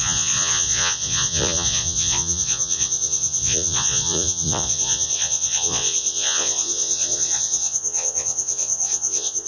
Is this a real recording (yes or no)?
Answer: no